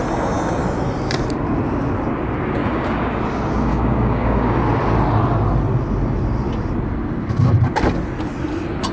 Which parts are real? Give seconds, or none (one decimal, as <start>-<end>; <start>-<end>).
0.0-2.6; 3.2-3.7; 4.6-8.9

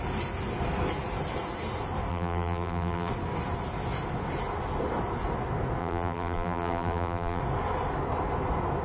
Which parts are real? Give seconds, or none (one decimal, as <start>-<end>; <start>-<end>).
0.0-2.1; 3.1-5.8; 7.4-8.8

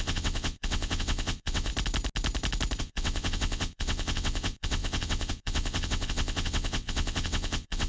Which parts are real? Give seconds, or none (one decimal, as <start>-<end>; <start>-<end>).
1.7-2.8

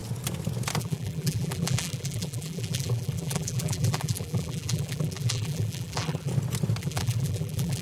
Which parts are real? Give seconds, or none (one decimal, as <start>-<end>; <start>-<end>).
0.0-0.8; 6.3-6.8

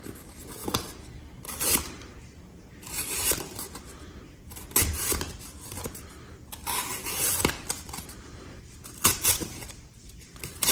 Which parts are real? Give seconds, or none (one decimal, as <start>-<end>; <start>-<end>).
none

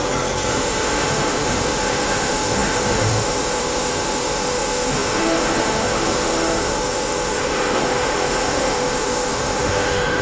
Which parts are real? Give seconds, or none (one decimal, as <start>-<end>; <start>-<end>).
0.0-0.5

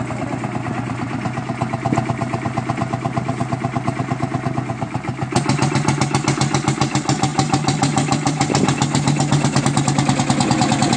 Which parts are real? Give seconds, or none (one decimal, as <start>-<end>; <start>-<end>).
0.0-11.0

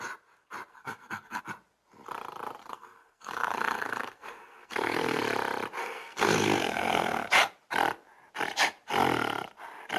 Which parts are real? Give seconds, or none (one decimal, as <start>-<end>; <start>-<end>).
0.0-0.7; 1.4-2.6; 5.2-5.8; 7.3-10.0